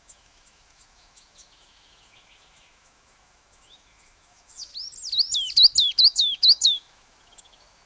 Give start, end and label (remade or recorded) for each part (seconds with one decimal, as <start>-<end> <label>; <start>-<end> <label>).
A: 0.0-4.7 remade; 4.7-5.9 recorded; 5.9-7.9 remade